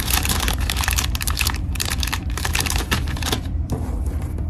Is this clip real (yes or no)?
no